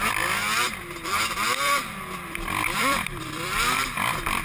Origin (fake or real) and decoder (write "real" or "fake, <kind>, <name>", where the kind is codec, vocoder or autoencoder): fake, vocoder, BigVGAN v2